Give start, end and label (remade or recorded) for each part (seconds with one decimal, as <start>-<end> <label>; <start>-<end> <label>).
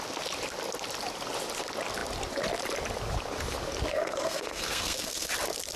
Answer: 0.0-3.9 recorded; 3.9-5.3 remade; 5.3-5.8 recorded